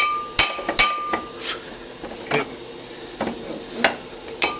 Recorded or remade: recorded